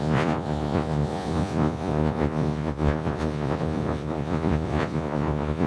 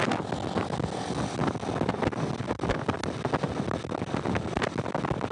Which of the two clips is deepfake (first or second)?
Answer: first